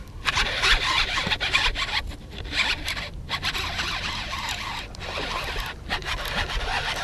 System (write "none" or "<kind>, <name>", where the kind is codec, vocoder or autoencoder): none